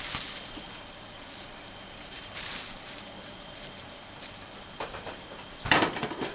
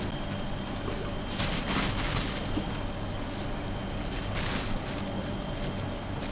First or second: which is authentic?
second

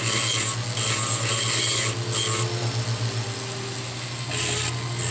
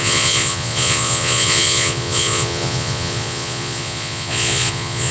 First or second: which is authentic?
first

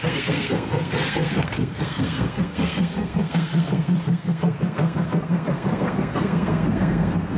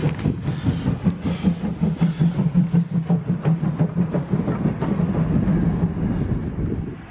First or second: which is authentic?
second